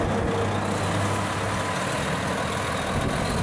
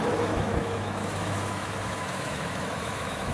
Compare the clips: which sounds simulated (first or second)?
second